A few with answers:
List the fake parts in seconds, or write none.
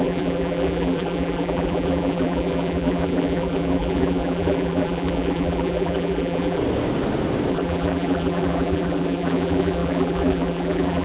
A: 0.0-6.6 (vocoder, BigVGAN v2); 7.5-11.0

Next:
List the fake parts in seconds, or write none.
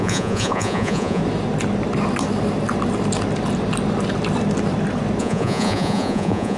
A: 0.0-1.2 (vocoder, Vocos); 5.2-6.6